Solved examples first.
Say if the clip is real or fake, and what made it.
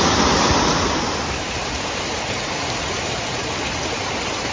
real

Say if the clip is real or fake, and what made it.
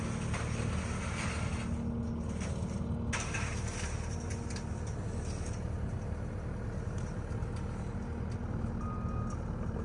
real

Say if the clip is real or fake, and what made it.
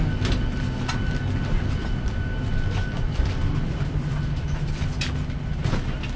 real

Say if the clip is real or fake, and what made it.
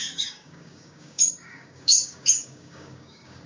fake, codec, DAC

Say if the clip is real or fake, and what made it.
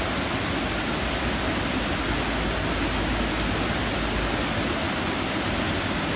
real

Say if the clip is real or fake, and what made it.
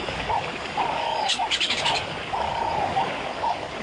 fake, codec, DAC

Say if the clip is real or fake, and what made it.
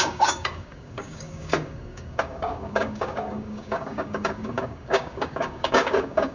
fake, codec, DAC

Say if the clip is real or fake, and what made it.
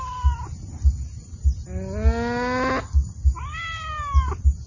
real